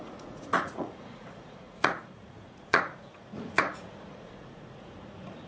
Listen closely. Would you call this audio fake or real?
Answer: fake